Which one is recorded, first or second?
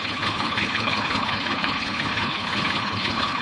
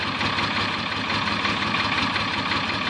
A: second